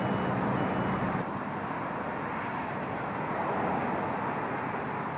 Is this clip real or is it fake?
real